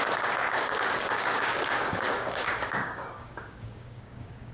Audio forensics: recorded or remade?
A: remade